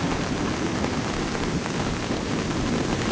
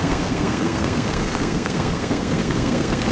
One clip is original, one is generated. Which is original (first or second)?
first